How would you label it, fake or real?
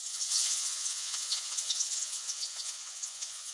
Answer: fake